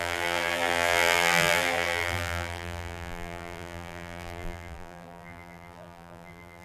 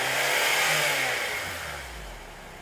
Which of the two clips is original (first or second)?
second